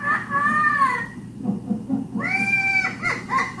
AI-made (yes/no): no